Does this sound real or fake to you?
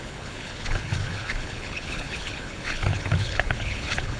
fake